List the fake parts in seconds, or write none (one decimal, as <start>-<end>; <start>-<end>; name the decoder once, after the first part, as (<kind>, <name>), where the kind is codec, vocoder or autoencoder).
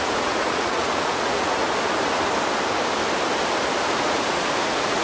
0.0-1.6 (vocoder, Vocos); 3.8-5.0